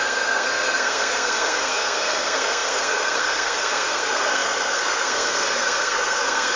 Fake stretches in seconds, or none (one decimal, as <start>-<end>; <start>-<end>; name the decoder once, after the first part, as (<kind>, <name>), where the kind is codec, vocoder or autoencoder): 0.0-6.6 (codec, SNAC)